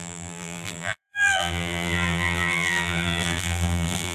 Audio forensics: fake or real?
fake